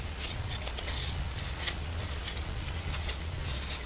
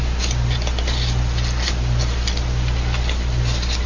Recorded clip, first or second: second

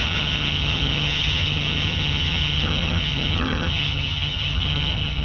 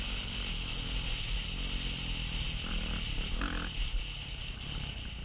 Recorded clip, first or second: second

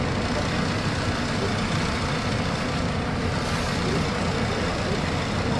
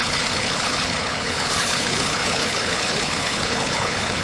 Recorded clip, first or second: first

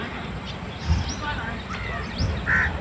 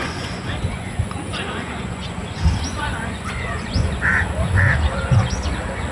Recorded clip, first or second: first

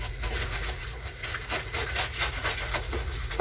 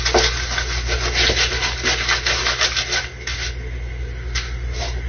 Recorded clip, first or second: second